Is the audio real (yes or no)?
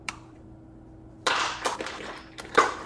no